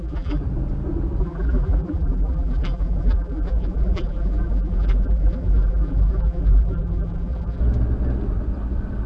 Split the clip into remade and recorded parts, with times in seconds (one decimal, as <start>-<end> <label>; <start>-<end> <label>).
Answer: 0.0-0.4 remade; 0.4-1.2 recorded; 1.2-7.6 remade; 7.6-9.1 recorded